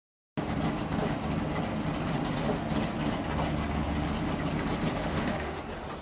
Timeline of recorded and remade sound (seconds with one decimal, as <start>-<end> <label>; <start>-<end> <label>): 0.0-5.0 recorded; 5.0-5.6 remade; 5.6-6.0 recorded